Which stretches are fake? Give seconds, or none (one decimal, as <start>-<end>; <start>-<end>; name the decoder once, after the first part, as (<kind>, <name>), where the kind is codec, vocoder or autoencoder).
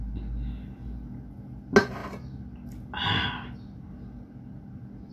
none